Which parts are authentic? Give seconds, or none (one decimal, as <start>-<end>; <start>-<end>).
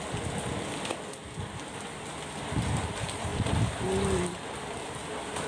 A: 0.0-5.5